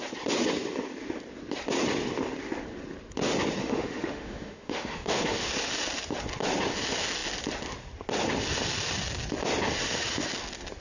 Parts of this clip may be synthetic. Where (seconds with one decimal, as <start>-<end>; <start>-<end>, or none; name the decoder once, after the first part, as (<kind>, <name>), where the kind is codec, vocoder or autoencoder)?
3.6-5.5 (autoencoder, DAC-VAE)